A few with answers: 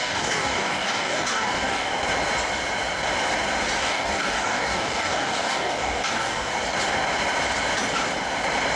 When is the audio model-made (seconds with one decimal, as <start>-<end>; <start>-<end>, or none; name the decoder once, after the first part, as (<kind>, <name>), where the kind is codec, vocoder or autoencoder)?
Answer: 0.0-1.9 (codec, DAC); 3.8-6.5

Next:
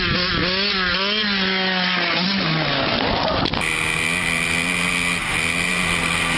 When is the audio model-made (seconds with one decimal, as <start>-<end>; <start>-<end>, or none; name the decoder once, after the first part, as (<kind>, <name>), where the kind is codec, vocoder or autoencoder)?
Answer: none

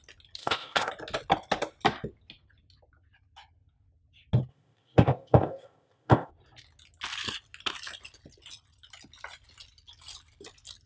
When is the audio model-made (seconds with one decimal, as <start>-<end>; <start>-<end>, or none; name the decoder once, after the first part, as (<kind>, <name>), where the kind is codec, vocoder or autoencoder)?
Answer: 0.4-0.9 (codec, ZipCodec); 4.5-6.3

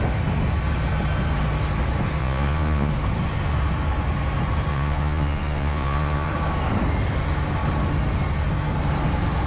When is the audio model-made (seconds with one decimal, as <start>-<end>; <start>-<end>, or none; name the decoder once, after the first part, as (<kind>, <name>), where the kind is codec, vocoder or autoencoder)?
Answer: 2.2-2.9 (vocoder, Vocos); 4.7-6.3

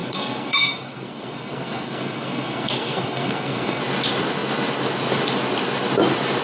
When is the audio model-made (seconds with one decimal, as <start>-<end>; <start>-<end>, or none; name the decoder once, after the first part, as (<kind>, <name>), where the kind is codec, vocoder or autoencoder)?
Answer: 0.0-3.8 (codec, SNAC)

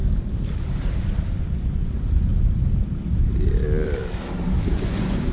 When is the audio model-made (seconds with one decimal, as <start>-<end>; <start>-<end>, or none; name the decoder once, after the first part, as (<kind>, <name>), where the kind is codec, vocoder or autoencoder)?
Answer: 1.4-2.3 (vocoder, Vocos); 4.7-5.3

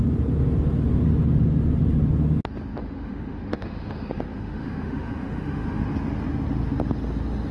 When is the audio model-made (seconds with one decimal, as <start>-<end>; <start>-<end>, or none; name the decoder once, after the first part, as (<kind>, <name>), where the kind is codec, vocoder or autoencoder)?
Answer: 2.8-5.8 (autoencoder, DAC-VAE)

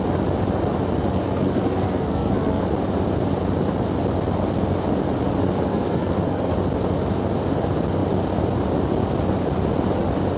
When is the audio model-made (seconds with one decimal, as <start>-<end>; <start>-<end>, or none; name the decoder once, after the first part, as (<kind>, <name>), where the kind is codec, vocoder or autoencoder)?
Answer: 1.1-2.6 (codec, SNAC); 5.7-6.5